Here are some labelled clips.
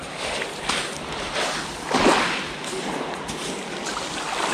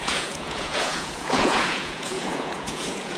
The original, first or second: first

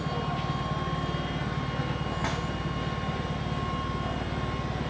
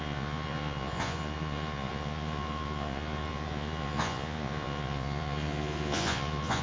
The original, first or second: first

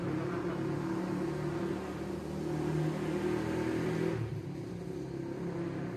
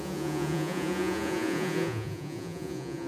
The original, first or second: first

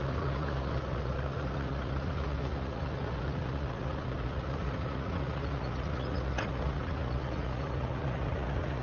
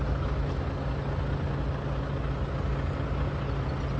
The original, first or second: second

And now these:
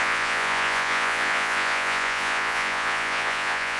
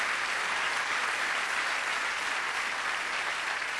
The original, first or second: second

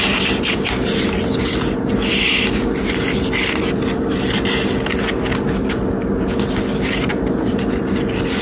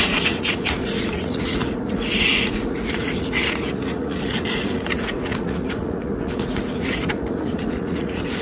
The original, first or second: first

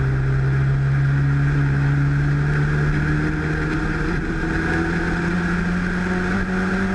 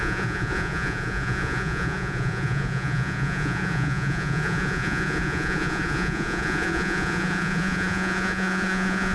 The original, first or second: first